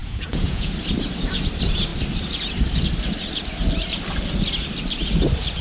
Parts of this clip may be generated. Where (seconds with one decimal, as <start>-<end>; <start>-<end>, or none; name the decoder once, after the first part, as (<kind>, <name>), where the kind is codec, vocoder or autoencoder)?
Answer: 0.0-0.7 (vocoder, Vocos)